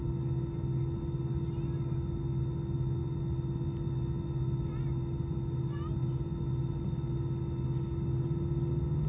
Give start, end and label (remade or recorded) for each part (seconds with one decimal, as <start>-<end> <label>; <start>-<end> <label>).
0.0-9.1 recorded